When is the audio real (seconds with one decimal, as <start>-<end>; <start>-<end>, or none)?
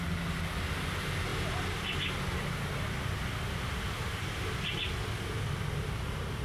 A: 0.0-6.4